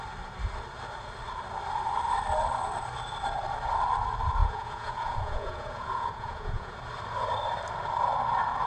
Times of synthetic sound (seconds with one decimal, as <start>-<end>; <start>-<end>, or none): 4.4-6.8